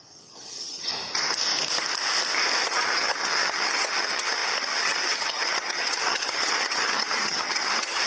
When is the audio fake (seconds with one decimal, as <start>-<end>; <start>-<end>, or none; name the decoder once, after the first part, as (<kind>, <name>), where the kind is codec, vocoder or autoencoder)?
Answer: 0.0-0.9 (vocoder, HiFi-GAN); 2.6-8.1